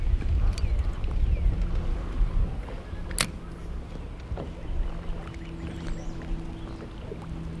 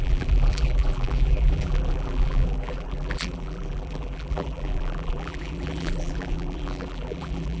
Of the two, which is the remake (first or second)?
second